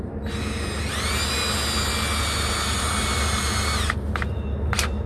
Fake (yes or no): no